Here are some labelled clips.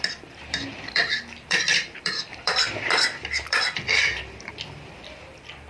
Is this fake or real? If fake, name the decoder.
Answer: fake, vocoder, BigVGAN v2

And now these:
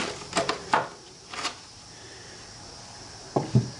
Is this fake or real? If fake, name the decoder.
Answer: real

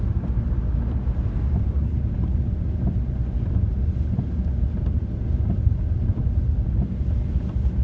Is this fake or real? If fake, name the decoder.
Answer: real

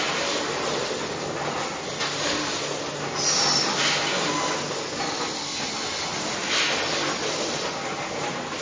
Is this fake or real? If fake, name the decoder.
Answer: real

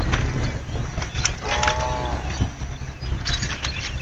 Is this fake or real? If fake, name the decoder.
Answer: real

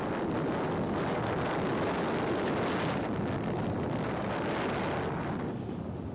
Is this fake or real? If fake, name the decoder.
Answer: real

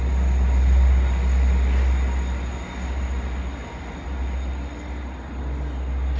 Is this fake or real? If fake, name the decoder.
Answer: real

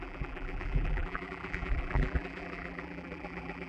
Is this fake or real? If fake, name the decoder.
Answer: fake, vocoder, BigVGAN v2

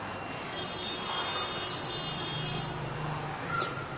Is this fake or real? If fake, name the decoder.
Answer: real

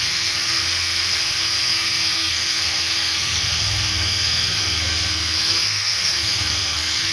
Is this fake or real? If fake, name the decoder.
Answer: fake, codec, SNAC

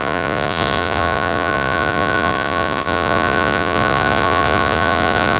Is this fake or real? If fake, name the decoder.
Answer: fake, vocoder, Vocos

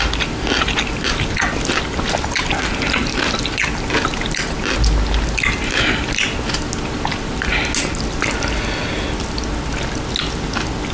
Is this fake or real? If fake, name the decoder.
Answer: real